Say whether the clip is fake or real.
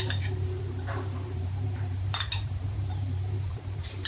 fake